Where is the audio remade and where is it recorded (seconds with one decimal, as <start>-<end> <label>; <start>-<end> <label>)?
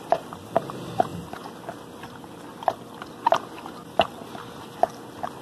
0.0-5.4 recorded